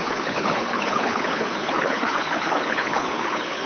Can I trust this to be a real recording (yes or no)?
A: no